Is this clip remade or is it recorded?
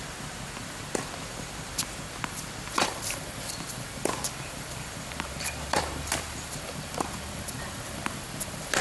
remade